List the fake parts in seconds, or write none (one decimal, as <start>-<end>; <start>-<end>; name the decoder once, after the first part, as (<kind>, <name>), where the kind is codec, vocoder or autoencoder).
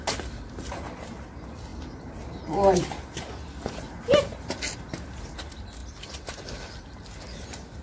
none